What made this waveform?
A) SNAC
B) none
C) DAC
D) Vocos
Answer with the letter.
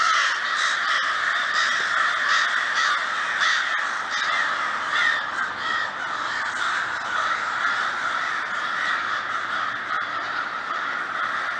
B